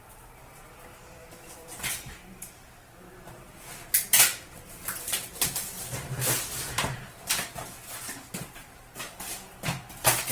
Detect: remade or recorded remade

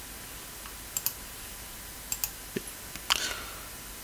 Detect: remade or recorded recorded